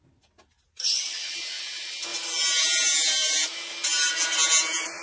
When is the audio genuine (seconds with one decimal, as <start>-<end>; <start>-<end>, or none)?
0.0-5.0